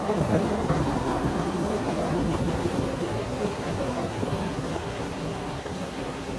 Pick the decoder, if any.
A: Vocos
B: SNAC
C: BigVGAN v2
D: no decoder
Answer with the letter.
B